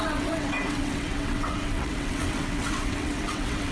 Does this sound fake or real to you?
fake